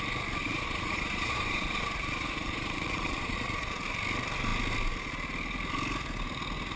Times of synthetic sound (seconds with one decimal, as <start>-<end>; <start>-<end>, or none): 0.4-3.7